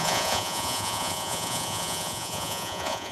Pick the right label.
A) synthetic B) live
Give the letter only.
A